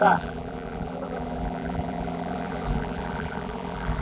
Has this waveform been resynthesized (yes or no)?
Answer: yes